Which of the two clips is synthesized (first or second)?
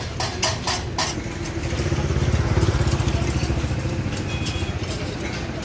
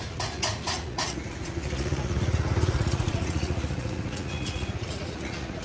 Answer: second